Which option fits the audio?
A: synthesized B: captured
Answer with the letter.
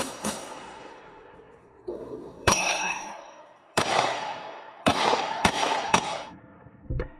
A